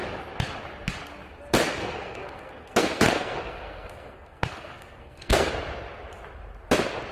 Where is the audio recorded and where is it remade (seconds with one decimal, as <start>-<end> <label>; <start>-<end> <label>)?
0.0-1.8 recorded; 1.8-5.5 remade; 5.5-7.1 recorded

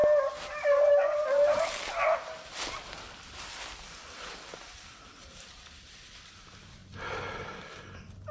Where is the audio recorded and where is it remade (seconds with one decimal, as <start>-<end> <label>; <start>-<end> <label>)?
0.0-8.3 recorded

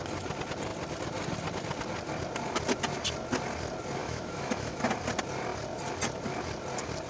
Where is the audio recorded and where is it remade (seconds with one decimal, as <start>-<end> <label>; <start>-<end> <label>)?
0.0-4.0 recorded; 4.0-4.8 remade; 4.8-7.1 recorded

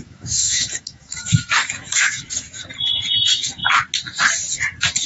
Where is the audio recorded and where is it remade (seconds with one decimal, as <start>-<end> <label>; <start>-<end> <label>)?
0.0-2.6 remade; 2.6-3.2 recorded; 3.2-3.6 remade; 3.6-5.1 recorded

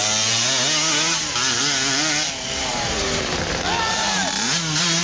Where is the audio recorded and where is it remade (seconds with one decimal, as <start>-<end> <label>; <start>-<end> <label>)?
0.0-2.6 recorded; 2.6-4.2 remade; 4.2-5.0 recorded

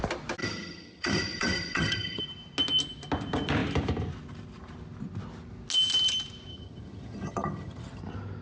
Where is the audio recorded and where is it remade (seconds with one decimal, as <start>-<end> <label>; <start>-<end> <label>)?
0.0-0.4 recorded; 0.4-2.2 remade; 2.2-6.5 recorded; 6.5-8.0 remade; 8.0-8.4 recorded

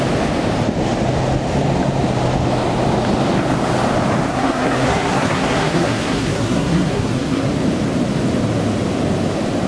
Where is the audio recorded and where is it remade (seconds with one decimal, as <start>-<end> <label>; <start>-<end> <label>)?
0.0-4.3 recorded; 4.3-7.5 remade; 7.5-9.7 recorded

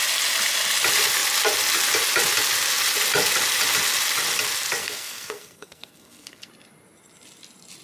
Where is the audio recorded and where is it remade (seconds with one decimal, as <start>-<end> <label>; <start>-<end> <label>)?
0.0-4.8 recorded; 4.8-6.5 remade; 6.5-7.8 recorded